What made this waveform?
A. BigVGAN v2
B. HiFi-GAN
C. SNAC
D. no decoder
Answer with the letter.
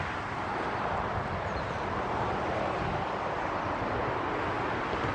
D